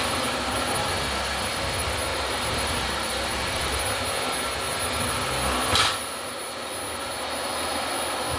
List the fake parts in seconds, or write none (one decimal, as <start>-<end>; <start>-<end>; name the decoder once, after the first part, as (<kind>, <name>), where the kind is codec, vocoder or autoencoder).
2.1-3.8 (vocoder, BigVGAN v2)